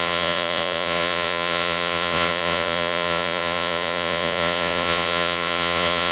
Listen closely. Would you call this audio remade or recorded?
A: remade